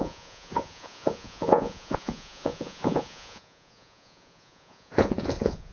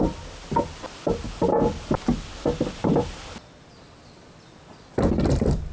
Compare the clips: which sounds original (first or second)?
second